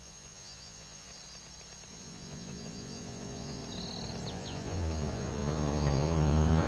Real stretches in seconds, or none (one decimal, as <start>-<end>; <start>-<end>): 1.1-1.9; 3.6-4.3